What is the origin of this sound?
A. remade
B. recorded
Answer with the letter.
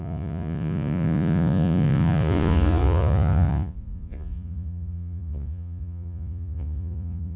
A